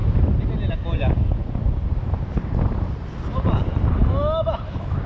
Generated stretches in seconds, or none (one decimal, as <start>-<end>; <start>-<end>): 4.0-5.1